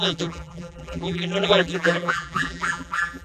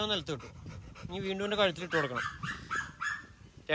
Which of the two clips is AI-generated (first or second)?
first